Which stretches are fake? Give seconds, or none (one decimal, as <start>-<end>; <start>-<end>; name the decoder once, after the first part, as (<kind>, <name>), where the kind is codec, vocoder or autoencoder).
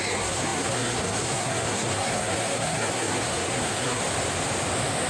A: 0.0-4.0 (codec, SNAC)